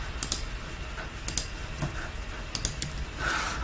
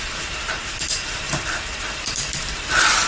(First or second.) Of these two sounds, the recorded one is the first